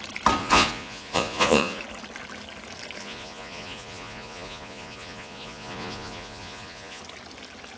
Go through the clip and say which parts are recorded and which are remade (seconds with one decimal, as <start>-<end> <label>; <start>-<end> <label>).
0.0-0.4 recorded; 0.4-1.8 remade; 1.8-3.0 recorded; 3.0-7.0 remade; 7.0-7.8 recorded